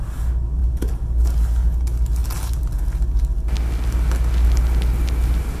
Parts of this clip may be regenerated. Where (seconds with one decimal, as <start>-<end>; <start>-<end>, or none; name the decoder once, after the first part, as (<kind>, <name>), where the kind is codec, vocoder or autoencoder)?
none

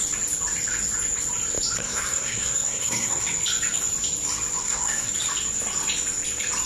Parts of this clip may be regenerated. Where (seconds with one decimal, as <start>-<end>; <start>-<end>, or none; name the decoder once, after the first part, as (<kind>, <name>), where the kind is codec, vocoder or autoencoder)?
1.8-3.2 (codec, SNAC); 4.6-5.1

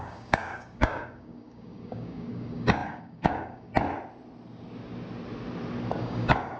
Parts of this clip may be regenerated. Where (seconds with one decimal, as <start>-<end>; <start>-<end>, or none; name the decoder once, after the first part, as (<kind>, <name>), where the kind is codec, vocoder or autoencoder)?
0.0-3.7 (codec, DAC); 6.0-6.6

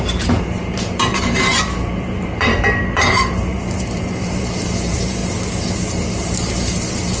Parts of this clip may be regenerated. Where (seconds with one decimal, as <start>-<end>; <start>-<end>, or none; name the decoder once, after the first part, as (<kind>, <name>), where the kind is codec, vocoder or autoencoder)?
0.0-5.2 (vocoder, BigVGAN v2); 5.7-7.2